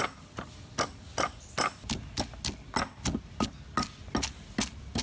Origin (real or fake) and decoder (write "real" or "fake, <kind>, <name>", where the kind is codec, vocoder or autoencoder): real